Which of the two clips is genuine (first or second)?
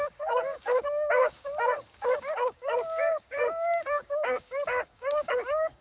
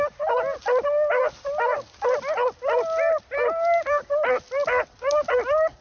second